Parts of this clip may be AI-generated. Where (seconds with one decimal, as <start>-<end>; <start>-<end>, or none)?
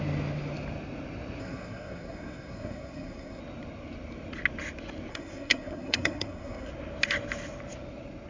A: 1.4-3.4; 5.1-6.7